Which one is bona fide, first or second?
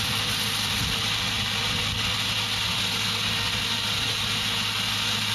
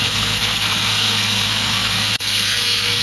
first